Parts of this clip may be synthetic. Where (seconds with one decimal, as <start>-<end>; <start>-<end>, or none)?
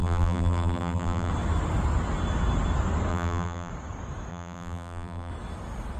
0.0-1.3; 3.1-3.7; 4.3-5.3